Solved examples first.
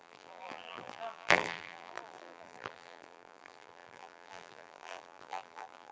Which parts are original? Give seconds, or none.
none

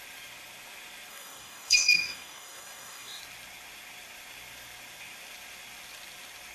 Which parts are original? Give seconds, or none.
0.0-1.1; 3.2-6.5

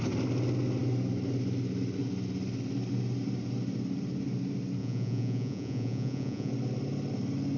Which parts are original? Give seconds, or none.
0.0-4.8; 6.5-7.6

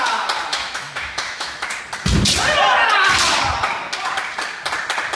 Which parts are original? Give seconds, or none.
0.0-0.5; 1.8-5.1